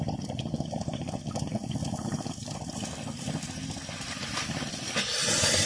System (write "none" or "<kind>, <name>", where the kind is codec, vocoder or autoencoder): vocoder, BigVGAN v2